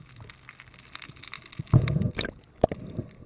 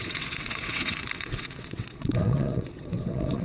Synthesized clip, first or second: second